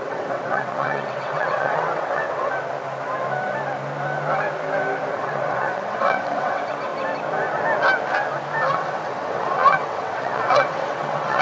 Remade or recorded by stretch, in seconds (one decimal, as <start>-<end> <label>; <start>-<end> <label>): 0.0-2.5 remade; 2.5-5.1 recorded; 5.1-6.9 remade; 6.9-8.7 recorded; 8.7-11.4 remade